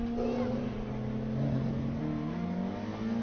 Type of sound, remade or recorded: recorded